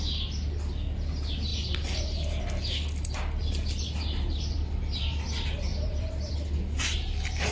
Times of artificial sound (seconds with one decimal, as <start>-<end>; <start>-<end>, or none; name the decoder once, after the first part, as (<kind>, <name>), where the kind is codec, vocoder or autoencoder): 1.5-2.4 (vocoder, BigVGAN v2); 5.7-6.3